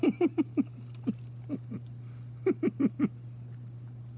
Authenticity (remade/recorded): recorded